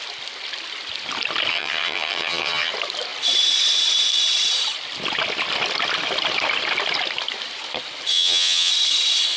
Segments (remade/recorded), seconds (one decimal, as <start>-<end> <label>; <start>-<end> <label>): 0.0-1.5 recorded; 1.5-2.7 remade; 2.7-8.1 recorded; 8.1-8.7 remade; 8.7-9.4 recorded